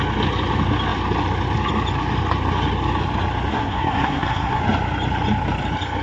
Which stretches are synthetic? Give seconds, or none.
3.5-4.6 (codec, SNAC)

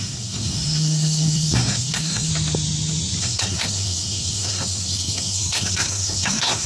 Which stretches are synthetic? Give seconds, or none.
0.0-2.3 (codec, SNAC); 3.2-6.7

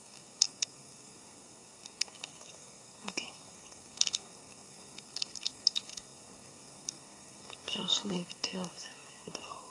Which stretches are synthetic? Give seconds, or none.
0.0-9.7 (codec, SNAC)